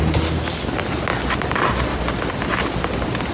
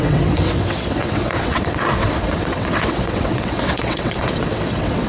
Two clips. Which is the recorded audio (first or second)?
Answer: first